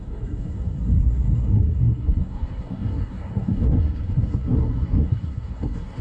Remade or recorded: remade